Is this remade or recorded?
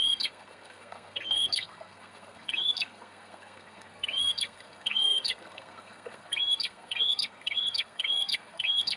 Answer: remade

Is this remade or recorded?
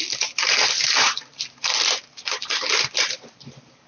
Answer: remade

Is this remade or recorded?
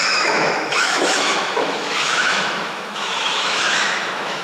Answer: remade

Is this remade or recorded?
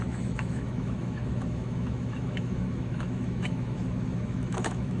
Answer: remade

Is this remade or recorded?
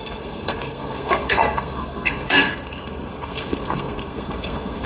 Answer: remade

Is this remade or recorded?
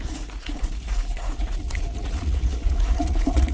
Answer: remade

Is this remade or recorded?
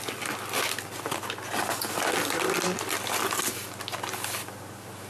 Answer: recorded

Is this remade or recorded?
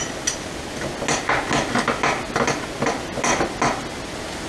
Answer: recorded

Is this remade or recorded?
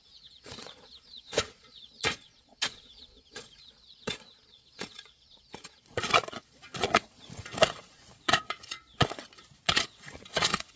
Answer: remade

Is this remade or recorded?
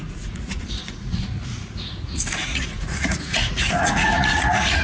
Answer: remade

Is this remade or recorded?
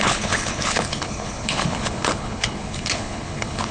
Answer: remade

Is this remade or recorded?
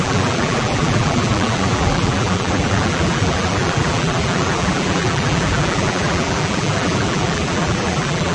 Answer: remade